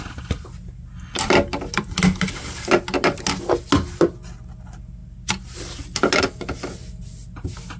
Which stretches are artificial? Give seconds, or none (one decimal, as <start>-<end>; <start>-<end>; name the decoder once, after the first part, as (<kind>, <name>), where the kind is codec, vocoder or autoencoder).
none